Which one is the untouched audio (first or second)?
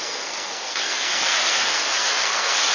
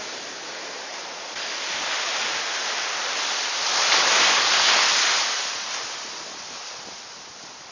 second